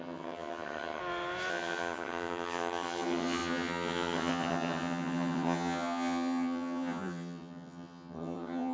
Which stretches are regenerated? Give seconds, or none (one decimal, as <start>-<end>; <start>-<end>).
0.0-1.0; 1.5-8.7